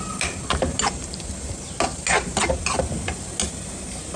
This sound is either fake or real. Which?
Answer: real